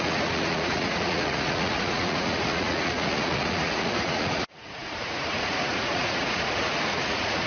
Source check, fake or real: fake